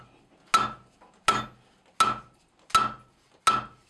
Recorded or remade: recorded